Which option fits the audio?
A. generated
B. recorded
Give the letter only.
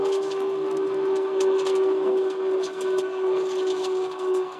A